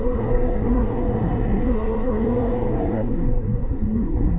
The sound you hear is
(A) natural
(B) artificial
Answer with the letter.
B